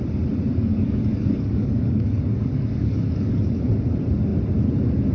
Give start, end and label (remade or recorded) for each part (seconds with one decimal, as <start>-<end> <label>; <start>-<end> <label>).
0.0-0.5 recorded; 0.5-3.6 remade; 3.6-5.1 recorded

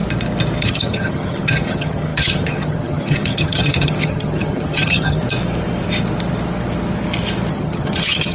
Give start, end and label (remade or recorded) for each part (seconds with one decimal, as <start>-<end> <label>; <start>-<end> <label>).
0.0-0.6 recorded; 0.6-5.2 remade; 5.2-7.5 recorded; 7.5-8.3 remade